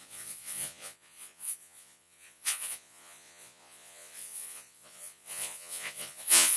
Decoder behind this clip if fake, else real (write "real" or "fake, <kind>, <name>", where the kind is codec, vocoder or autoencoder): fake, vocoder, Vocos